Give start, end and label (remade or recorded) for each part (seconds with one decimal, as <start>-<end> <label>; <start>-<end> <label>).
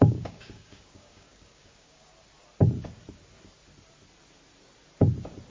0.0-2.1 remade; 2.1-5.5 recorded